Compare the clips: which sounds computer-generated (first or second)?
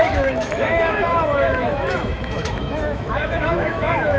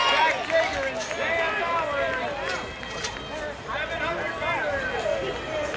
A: first